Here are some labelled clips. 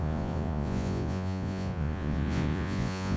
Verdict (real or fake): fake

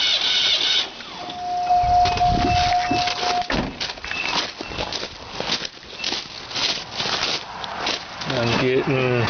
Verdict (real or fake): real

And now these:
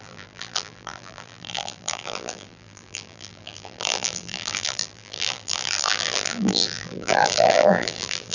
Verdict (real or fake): fake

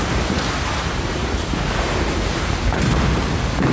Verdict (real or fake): real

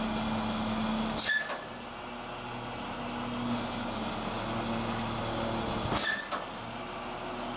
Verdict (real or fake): real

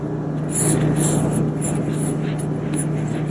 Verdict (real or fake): real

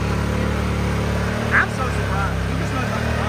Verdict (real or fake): real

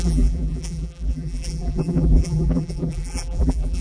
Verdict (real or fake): fake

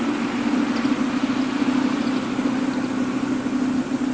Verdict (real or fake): real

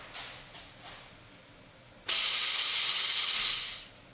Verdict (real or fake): real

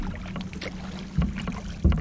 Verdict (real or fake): real